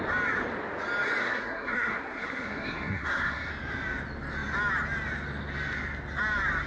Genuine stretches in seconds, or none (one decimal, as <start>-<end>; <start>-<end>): 0.0-1.2; 3.5-6.7

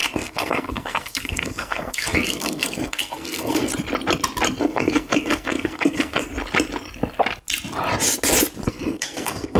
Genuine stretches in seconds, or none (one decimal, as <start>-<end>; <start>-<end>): 3.7-4.6; 6.3-8.7

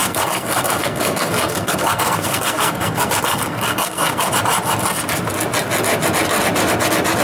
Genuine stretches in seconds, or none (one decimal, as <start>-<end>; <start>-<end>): 4.3-7.2

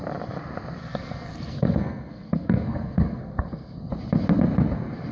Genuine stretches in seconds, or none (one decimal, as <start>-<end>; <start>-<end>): 0.0-0.8; 3.9-5.1

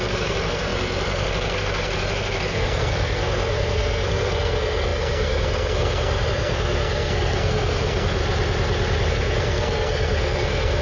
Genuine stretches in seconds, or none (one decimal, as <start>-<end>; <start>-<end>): 8.2-9.1

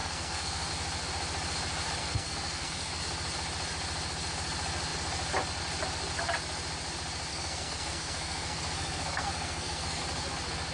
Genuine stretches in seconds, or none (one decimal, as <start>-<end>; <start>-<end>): 0.7-2.0; 3.0-7.3; 10.0-10.7

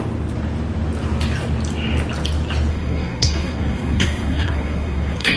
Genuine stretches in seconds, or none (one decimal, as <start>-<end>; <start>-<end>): 0.0-2.7